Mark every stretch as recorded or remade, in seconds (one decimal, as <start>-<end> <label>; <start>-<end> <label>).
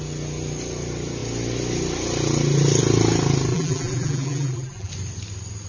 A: 0.0-3.5 recorded; 3.5-4.9 remade; 4.9-5.7 recorded